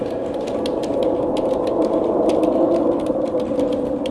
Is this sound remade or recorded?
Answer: recorded